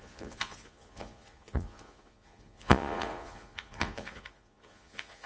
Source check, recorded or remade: remade